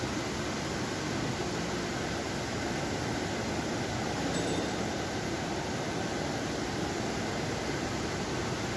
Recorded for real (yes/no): yes